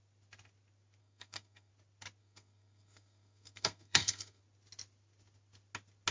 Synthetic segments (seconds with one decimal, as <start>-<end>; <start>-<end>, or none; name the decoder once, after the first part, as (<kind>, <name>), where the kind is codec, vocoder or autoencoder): 1.0-1.7 (codec, SNAC); 2.2-4.4